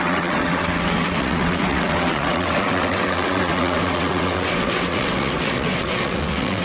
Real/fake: fake